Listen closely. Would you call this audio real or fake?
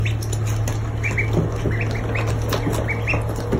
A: real